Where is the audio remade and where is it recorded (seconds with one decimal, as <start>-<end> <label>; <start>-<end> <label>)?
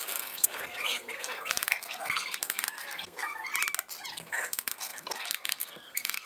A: 0.0-3.5 remade; 3.5-4.1 recorded; 4.1-6.3 remade